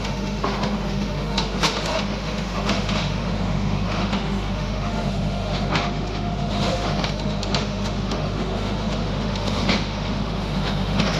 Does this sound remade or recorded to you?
remade